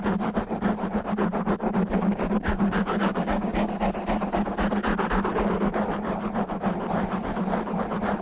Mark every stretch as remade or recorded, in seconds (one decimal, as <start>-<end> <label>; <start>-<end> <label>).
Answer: 0.0-2.1 recorded; 2.1-3.7 remade; 3.7-8.2 recorded